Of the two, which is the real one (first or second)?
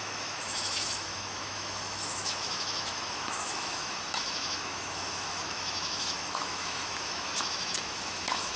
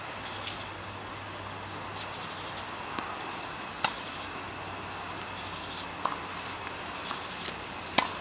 second